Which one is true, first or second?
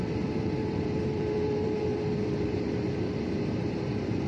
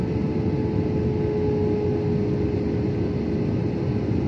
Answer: second